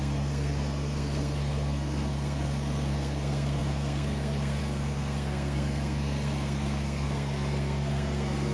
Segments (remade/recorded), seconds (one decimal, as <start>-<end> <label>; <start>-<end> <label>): 0.0-8.5 remade